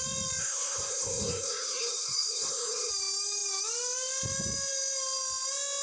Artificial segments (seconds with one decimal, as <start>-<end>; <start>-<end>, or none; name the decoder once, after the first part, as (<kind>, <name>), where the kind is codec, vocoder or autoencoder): 0.4-2.9 (codec, SNAC)